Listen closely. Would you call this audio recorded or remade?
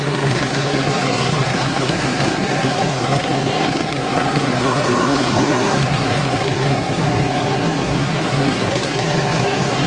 remade